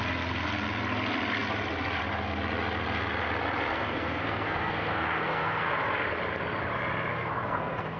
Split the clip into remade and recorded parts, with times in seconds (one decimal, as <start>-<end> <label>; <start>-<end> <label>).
0.0-3.7 recorded; 3.7-5.7 remade; 5.7-7.1 recorded; 7.1-8.0 remade